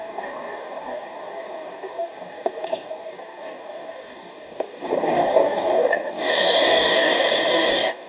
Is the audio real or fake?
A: fake